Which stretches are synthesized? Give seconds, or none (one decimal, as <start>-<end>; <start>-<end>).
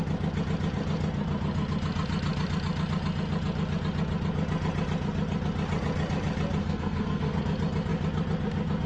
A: 6.6-7.4